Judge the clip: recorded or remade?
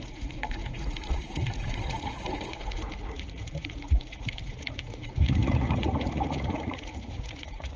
remade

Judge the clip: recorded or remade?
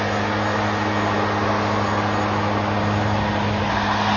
recorded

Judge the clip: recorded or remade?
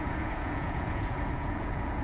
remade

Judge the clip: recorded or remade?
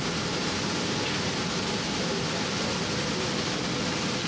recorded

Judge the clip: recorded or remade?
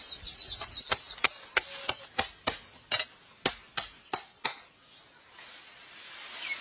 recorded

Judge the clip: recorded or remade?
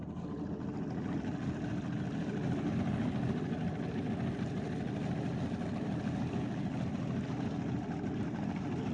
recorded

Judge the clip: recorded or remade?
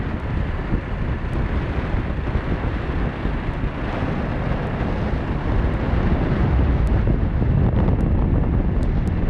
recorded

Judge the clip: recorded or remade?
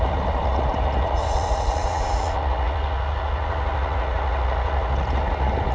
remade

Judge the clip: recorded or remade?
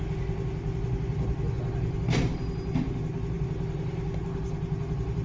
recorded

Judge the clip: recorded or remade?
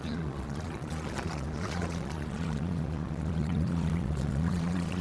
remade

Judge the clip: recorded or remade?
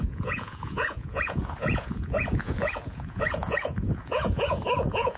remade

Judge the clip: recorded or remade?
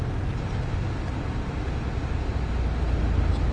recorded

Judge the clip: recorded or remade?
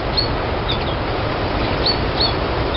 recorded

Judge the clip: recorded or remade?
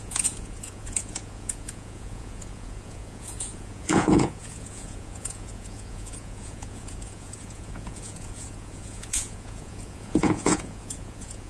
remade